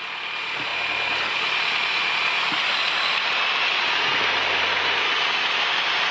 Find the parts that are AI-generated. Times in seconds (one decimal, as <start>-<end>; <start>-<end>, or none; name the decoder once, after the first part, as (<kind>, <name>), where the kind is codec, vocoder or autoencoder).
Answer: none